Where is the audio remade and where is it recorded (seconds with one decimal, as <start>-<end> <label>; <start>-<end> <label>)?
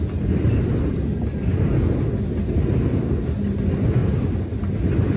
0.0-5.2 recorded